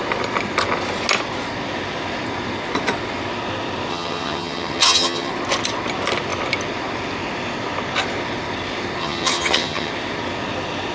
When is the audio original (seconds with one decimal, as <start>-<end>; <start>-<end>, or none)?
0.0-3.9; 5.3-9.0; 9.9-10.9